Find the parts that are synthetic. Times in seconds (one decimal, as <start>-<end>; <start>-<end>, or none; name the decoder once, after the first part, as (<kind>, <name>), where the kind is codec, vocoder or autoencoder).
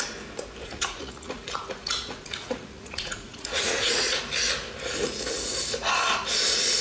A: 0.6-4.2 (vocoder, Vocos)